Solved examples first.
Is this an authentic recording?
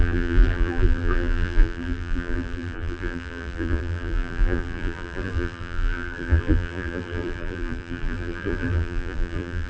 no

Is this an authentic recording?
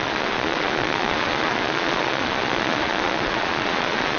no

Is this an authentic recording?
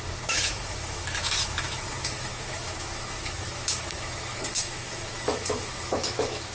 no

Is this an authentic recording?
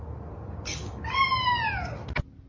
yes